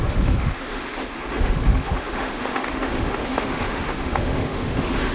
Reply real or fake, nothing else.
fake